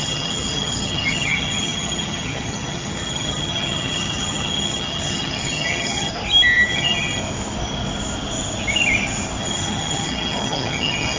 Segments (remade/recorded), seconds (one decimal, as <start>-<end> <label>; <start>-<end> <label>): 0.0-6.1 remade; 6.1-6.7 recorded; 6.7-7.2 remade; 7.2-9.4 recorded; 9.4-11.2 remade